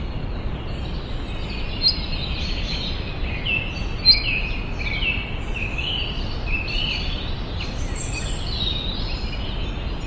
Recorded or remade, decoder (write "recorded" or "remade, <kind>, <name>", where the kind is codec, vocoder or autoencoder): recorded